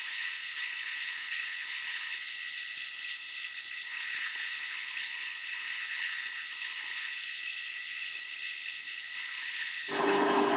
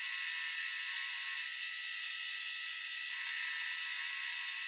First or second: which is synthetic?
first